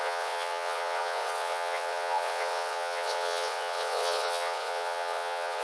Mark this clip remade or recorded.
remade